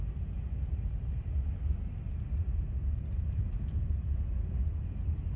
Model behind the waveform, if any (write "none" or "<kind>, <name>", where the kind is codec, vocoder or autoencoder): none